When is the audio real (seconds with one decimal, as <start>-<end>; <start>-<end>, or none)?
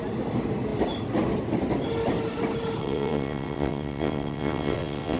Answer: 0.0-2.8